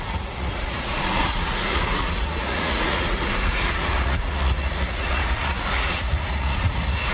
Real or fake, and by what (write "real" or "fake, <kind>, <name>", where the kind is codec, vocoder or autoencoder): fake, vocoder, Vocos